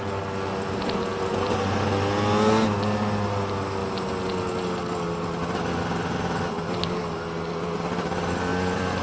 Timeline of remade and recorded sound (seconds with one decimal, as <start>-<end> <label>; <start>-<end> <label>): 0.0-9.0 recorded

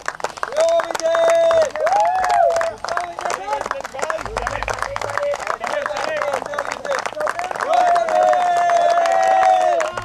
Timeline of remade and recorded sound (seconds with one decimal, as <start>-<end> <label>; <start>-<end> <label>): 0.0-3.9 recorded; 3.9-5.4 remade; 5.4-10.0 recorded

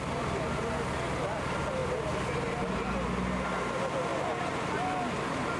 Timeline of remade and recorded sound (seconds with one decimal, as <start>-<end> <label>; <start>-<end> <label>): 0.0-5.6 recorded

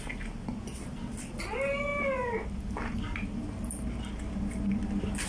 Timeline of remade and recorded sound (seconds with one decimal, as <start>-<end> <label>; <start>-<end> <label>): 0.0-5.3 recorded

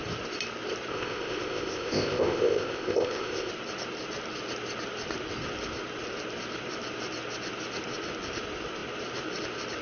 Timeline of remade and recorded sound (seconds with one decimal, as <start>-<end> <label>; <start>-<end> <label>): 0.0-0.9 recorded; 0.9-3.5 remade; 3.5-9.8 recorded

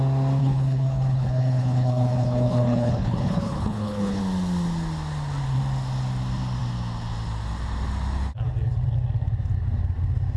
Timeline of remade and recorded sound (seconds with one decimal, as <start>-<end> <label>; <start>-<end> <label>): 0.0-0.4 recorded; 0.4-4.2 remade; 4.2-10.4 recorded